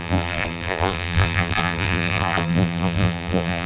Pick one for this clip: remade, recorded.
remade